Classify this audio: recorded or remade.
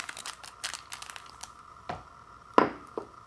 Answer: recorded